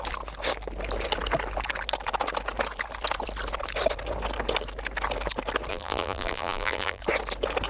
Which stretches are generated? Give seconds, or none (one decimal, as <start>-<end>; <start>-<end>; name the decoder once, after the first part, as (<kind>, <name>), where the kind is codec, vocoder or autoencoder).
5.7-7.0 (vocoder, BigVGAN v2)